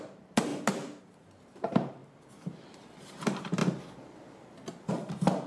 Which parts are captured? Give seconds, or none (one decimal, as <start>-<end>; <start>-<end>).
0.5-1.0; 2.0-2.8; 3.6-4.9